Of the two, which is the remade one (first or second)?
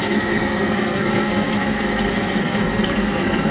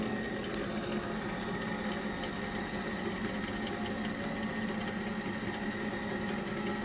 first